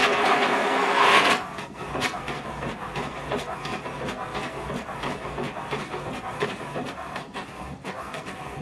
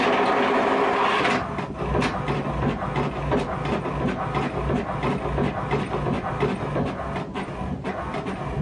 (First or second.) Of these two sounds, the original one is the second